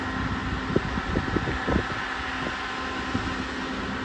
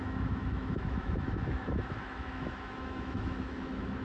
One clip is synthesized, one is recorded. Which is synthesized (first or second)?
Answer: second